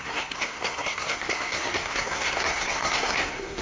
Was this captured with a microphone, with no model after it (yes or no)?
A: no